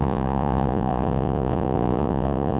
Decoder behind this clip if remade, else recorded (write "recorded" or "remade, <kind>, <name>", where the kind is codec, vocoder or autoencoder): remade, vocoder, Vocos